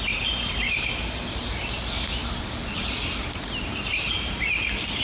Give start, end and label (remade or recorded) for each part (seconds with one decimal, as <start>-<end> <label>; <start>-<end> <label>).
0.0-5.0 recorded